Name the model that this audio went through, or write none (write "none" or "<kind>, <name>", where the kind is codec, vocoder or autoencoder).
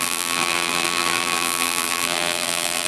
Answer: vocoder, BigVGAN v2